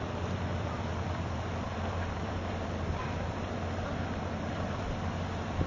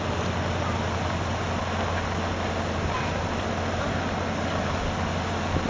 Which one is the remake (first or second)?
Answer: first